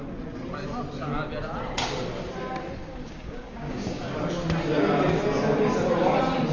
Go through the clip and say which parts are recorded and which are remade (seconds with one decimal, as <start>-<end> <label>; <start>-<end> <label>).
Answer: 0.0-2.9 recorded; 2.9-4.1 remade; 4.1-6.5 recorded